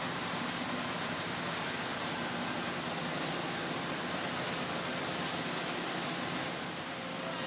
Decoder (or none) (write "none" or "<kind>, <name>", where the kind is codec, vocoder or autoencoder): none